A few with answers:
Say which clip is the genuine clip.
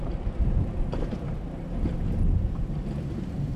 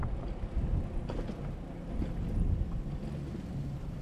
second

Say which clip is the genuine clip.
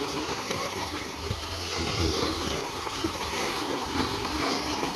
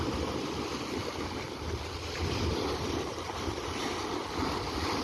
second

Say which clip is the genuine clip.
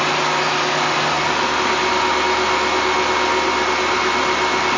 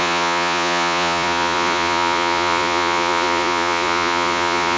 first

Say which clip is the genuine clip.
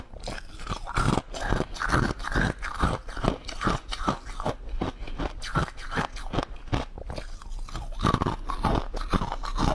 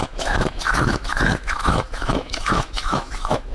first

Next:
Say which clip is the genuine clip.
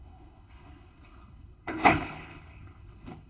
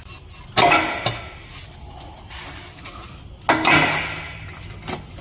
second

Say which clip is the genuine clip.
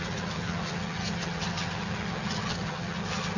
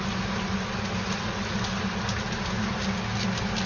second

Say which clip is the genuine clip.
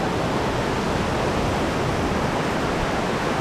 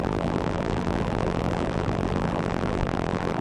first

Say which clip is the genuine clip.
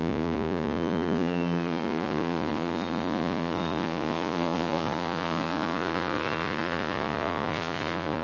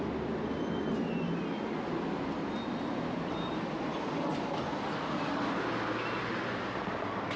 second